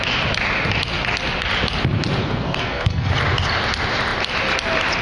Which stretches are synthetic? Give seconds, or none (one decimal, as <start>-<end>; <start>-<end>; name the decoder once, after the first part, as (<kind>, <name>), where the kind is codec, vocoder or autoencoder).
2.2-3.1 (codec, SNAC)